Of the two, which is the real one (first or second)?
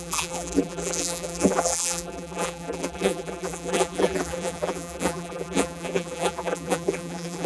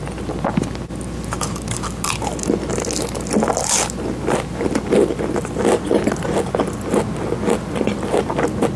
second